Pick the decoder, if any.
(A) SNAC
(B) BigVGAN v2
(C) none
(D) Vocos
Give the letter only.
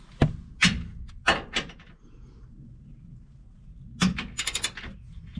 C